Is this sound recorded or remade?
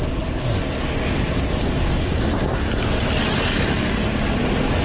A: recorded